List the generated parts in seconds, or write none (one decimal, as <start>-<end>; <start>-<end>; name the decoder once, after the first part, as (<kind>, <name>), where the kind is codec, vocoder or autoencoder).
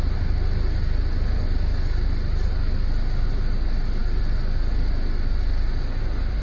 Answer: none